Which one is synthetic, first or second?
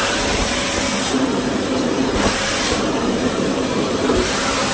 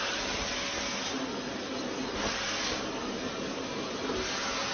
first